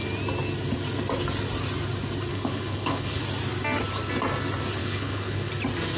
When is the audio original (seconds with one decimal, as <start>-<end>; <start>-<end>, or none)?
0.0-2.3; 3.2-4.8; 5.5-6.0